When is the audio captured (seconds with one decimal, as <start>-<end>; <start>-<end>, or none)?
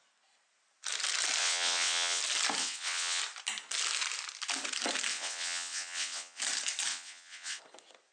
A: 0.0-1.4; 2.2-2.6; 3.2-5.1; 6.4-6.9; 7.6-8.1